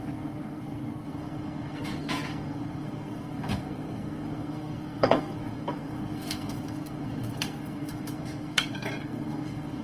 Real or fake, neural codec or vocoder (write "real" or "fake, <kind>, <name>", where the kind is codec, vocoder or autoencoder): fake, codec, SNAC